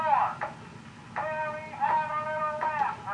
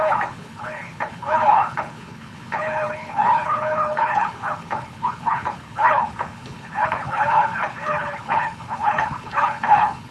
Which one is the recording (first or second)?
first